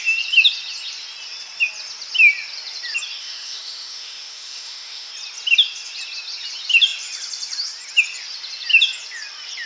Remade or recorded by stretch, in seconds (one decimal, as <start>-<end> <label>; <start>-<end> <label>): 0.0-3.2 recorded; 3.2-5.1 remade; 5.1-9.7 recorded